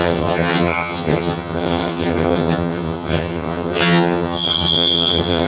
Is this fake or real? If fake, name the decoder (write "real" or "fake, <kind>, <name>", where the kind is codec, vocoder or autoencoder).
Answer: fake, vocoder, HiFi-GAN